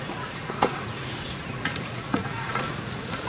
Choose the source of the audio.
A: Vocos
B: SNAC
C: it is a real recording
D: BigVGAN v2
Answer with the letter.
A